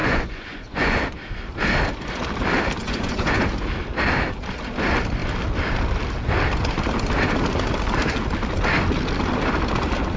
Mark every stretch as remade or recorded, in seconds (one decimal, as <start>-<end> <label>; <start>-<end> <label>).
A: 0.0-1.0 remade; 1.0-2.8 recorded; 2.8-3.4 remade; 3.4-10.2 recorded